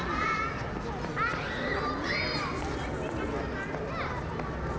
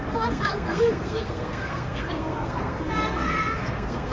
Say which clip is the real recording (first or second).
first